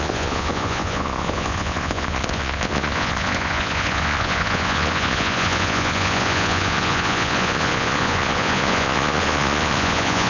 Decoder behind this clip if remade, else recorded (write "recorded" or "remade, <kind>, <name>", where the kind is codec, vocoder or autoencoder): remade, vocoder, Vocos